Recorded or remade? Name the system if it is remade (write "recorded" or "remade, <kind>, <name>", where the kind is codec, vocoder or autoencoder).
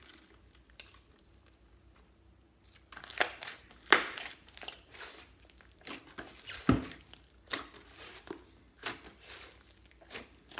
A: recorded